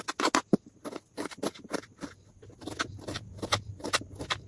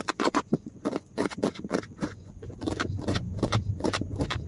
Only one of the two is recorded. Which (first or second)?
first